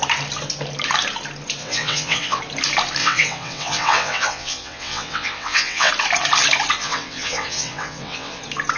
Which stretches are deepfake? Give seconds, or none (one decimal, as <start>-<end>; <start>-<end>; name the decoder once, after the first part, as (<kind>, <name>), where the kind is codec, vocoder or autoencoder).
1.6-2.4 (vocoder, WaveNeXt); 3.0-5.9; 6.8-8.4